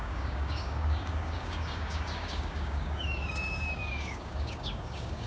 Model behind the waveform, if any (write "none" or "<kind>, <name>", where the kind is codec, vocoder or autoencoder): codec, DAC